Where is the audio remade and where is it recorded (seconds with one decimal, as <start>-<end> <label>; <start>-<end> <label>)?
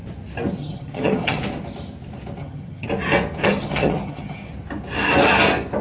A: 0.0-0.6 recorded; 0.6-1.4 remade; 1.4-2.4 recorded; 2.4-2.9 remade; 2.9-3.4 recorded; 3.4-4.5 remade; 4.5-5.8 recorded